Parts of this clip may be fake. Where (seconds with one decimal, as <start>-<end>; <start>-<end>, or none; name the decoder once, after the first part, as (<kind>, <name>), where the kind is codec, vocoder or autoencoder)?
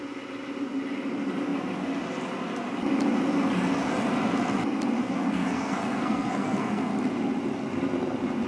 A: 5.0-6.9 (codec, SNAC)